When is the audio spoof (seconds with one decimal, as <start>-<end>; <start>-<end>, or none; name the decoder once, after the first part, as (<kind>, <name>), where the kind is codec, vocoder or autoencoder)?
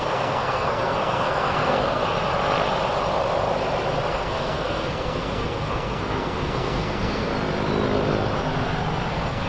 0.0-2.0 (codec, SNAC); 4.1-7.3; 9.1-9.5